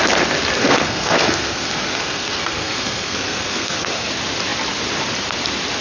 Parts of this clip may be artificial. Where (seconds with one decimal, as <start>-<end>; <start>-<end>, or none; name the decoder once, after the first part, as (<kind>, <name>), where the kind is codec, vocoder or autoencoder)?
0.6-4.1 (codec, SNAC)